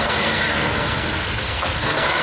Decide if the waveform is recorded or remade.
remade